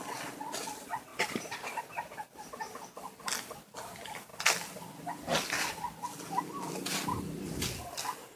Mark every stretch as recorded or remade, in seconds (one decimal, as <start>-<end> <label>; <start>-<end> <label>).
0.0-8.4 recorded

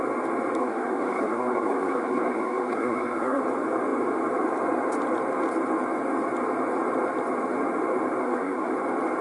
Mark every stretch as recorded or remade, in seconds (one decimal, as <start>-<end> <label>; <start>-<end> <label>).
0.0-0.6 recorded; 0.6-3.4 remade; 3.4-8.2 recorded; 8.2-8.7 remade; 8.7-9.2 recorded